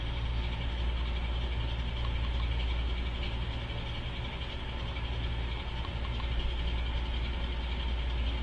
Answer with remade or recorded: recorded